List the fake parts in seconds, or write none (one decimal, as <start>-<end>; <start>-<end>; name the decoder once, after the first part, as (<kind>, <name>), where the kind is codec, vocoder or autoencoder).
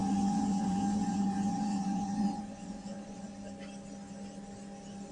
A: 0.0-3.3 (vocoder, Vocos)